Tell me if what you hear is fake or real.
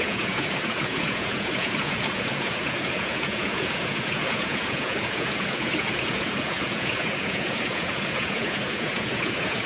fake